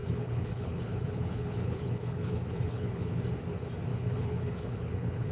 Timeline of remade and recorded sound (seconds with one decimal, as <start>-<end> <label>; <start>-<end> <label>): 0.0-3.2 remade; 3.2-3.9 recorded; 3.9-5.3 remade